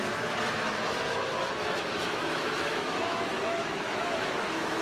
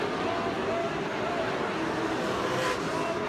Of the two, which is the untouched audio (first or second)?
second